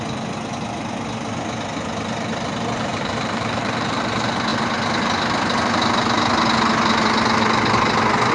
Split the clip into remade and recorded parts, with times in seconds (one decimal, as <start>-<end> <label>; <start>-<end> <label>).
0.0-2.9 recorded; 2.9-4.0 remade; 4.0-8.3 recorded